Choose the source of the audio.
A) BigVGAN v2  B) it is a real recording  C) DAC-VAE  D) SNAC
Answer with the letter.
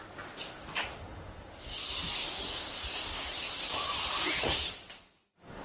B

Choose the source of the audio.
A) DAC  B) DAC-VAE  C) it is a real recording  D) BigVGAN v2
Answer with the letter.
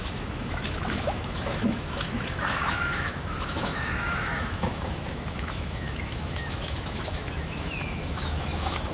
B